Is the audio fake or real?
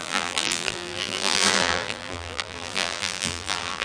fake